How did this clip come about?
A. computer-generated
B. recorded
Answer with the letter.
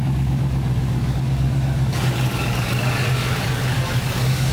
A